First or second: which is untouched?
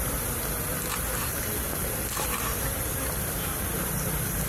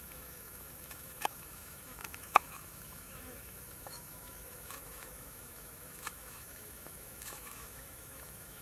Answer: first